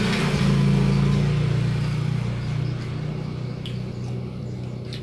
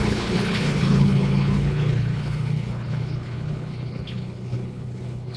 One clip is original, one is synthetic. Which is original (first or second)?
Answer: first